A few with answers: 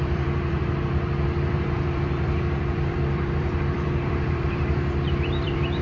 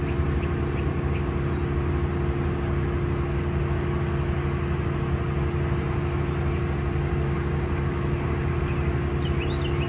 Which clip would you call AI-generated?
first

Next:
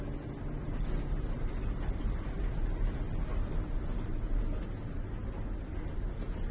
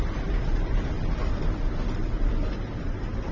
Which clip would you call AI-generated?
second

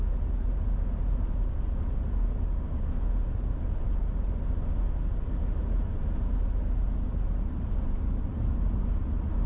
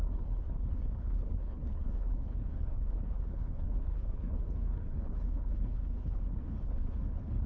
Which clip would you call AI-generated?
second